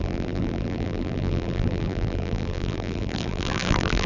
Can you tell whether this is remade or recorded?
remade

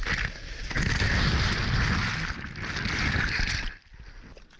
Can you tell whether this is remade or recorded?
recorded